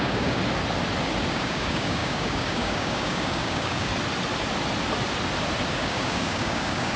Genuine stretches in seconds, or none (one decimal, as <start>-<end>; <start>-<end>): 0.4-1.3; 3.9-5.7